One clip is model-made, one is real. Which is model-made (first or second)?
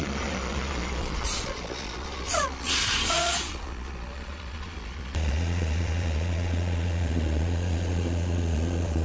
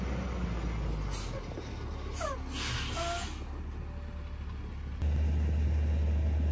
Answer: first